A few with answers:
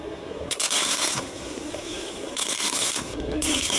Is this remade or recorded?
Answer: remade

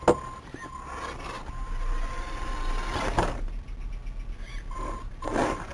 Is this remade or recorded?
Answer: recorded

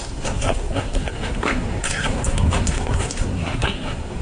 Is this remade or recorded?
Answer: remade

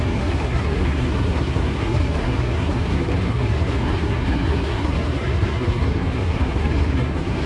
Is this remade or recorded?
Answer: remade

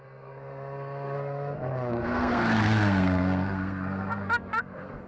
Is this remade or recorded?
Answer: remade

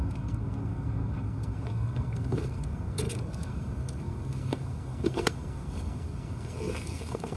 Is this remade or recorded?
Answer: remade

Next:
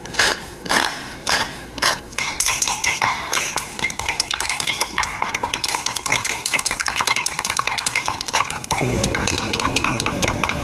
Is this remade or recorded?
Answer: remade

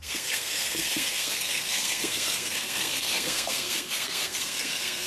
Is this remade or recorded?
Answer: remade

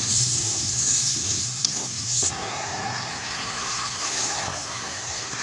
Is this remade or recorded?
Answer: remade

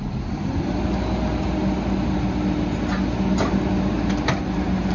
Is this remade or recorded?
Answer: recorded